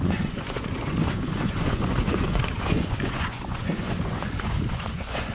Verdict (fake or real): fake